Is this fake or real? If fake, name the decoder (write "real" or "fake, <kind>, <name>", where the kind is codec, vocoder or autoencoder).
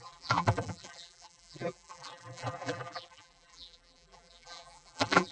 fake, vocoder, BigVGAN v2